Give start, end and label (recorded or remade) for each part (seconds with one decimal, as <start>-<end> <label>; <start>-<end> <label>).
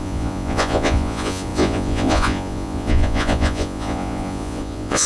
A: 0.0-5.1 remade